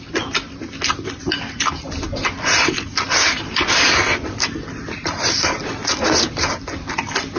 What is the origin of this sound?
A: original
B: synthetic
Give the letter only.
B